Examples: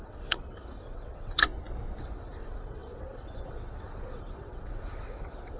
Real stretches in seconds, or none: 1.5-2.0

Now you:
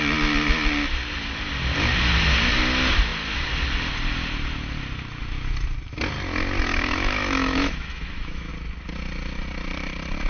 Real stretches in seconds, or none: 0.0-6.7; 8.5-10.3